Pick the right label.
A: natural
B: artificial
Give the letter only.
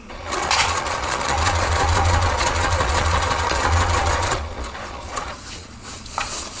B